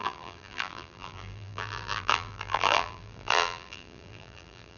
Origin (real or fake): fake